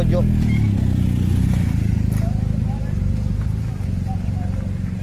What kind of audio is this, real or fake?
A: real